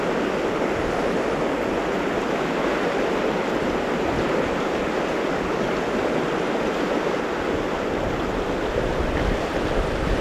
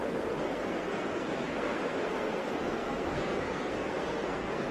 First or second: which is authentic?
first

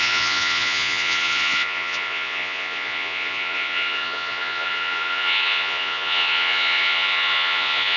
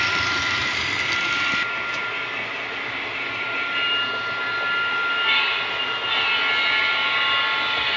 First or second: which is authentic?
second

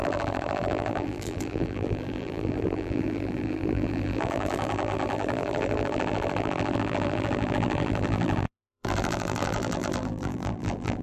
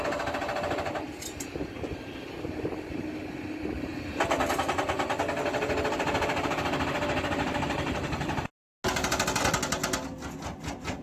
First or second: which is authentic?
second